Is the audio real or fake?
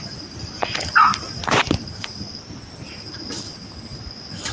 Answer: real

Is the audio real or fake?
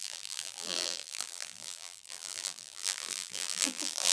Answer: fake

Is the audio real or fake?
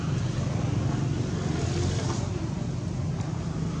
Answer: real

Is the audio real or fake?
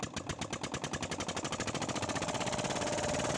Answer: real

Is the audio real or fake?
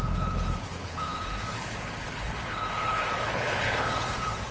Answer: fake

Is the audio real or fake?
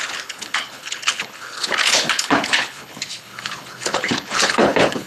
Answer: fake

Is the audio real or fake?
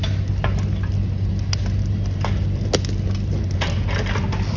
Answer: real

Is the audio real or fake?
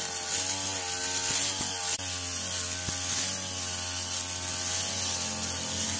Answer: real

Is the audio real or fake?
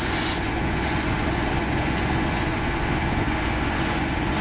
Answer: fake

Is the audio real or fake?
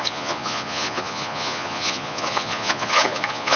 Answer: fake